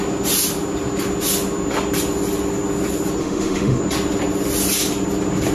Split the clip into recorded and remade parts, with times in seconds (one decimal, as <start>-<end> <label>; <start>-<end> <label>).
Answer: 0.0-3.2 recorded; 3.2-3.8 remade; 3.8-5.5 recorded